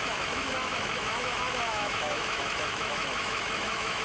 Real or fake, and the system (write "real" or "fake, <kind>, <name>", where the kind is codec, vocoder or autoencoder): fake, autoencoder, DAC-VAE